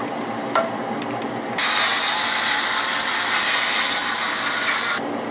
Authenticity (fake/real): real